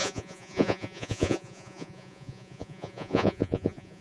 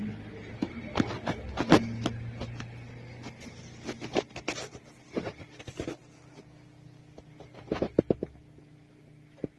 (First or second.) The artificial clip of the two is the first